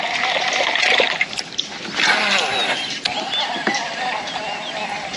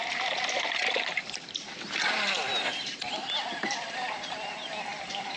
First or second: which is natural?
first